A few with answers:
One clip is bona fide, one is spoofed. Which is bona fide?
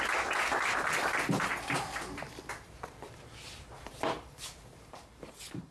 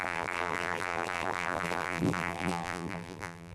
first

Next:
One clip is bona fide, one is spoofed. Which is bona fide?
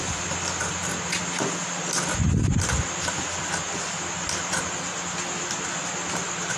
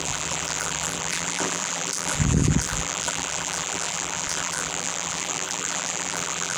first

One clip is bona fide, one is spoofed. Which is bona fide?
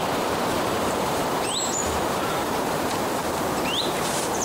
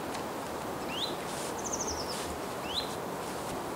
second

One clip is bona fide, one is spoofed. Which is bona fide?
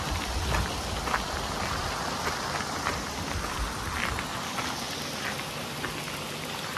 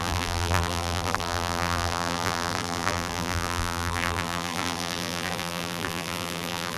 first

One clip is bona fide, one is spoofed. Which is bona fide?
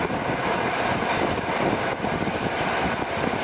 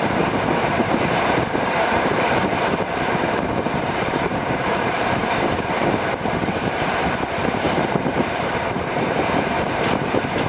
first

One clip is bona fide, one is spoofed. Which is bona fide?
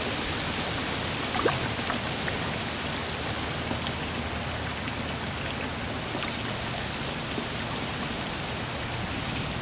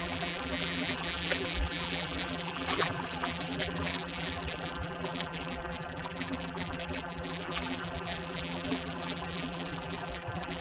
first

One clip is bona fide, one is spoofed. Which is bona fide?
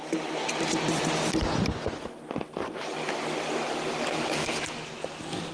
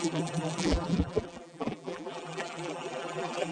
first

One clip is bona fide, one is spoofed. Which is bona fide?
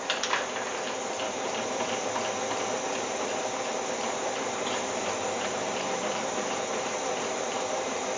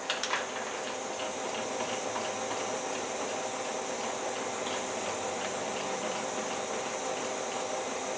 second